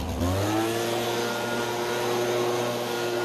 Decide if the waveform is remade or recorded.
recorded